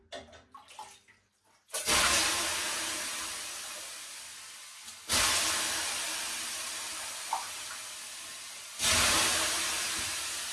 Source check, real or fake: real